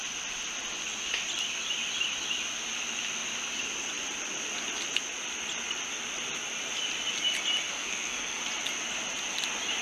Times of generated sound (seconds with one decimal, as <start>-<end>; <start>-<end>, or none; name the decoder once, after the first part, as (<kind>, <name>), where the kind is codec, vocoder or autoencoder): 7.7-8.4 (codec, SNAC)